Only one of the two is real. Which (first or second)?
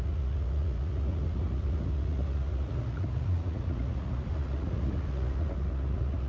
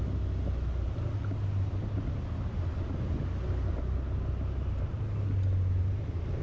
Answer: second